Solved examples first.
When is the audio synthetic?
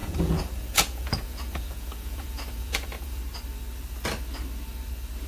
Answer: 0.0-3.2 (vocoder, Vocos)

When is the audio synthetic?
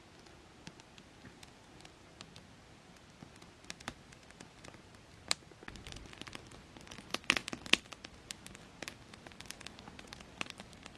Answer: none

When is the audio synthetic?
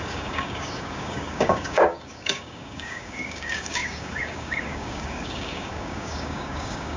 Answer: 0.0-7.0 (codec, DAC)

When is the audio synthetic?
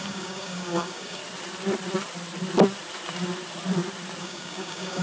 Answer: 0.0-1.2 (codec, DAC); 4.2-5.0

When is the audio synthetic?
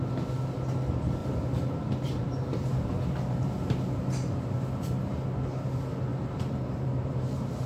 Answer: 1.2-3.7 (vocoder, BigVGAN v2); 6.1-7.7